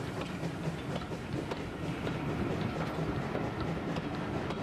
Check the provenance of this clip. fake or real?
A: real